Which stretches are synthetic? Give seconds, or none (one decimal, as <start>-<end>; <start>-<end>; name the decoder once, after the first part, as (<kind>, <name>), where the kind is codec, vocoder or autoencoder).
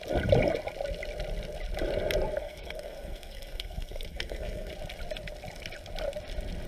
2.4-4.7 (codec, SNAC)